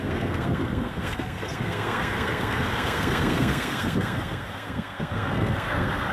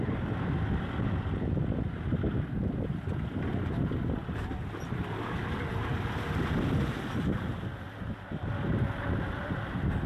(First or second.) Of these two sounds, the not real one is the first